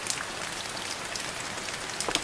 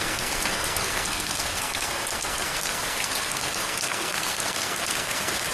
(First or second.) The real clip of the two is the first